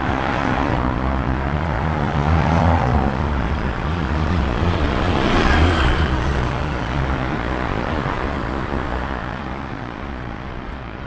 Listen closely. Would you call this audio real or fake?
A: fake